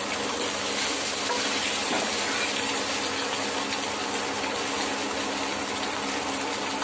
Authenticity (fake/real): real